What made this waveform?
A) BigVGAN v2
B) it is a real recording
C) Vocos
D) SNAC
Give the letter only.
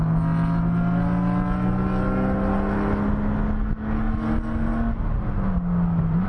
B